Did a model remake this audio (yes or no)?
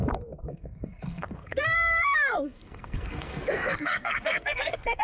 yes